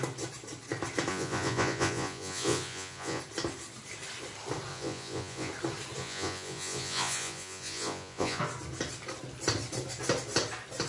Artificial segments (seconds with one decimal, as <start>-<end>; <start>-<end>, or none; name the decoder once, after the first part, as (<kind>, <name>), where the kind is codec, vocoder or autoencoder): 1.1-3.2 (vocoder, Vocos); 4.7-5.5; 6.0-8.4